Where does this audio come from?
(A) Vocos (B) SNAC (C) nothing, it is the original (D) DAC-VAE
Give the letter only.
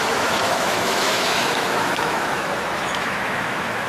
D